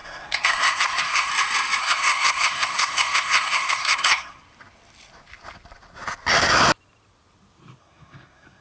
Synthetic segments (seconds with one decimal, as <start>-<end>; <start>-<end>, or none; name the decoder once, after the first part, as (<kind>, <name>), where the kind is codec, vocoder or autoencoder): 0.0-1.3 (codec, SNAC); 1.8-4.4; 7.8-8.6